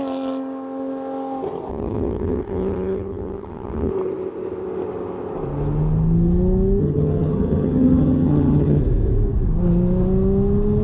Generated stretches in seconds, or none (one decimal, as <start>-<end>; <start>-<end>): 1.7-3.9; 6.8-8.8